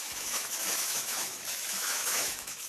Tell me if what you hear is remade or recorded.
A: remade